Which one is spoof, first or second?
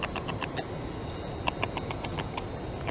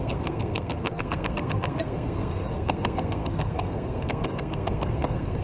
second